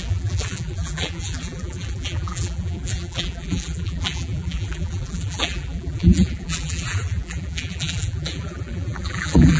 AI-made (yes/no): yes